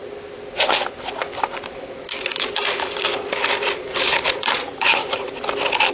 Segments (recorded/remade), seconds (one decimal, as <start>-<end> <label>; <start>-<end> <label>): 0.0-3.9 recorded; 3.9-5.3 remade; 5.3-5.9 recorded